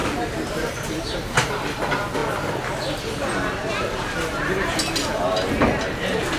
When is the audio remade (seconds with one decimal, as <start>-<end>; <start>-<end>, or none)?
0.0-1.5